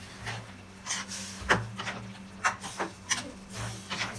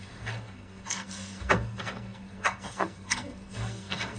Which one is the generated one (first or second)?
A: second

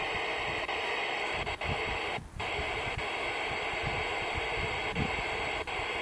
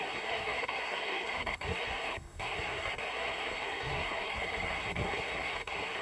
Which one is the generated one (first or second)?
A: second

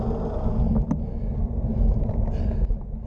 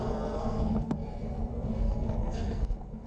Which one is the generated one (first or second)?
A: second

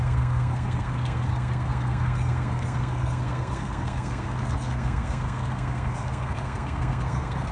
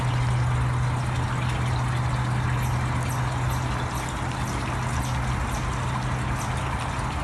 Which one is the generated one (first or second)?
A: first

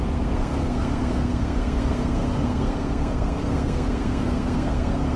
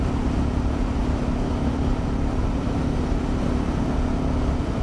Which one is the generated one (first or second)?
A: first